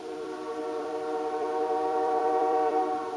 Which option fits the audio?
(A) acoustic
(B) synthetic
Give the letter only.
B